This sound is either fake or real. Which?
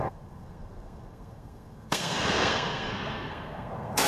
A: fake